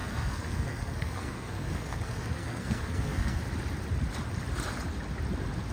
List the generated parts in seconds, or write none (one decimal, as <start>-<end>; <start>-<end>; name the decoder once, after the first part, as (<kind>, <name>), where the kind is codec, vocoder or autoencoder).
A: 0.0-3.4 (codec, SNAC)